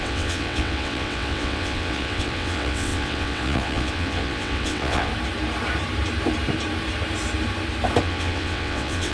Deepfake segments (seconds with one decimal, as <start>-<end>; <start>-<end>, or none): 0.0-5.1; 8.0-9.1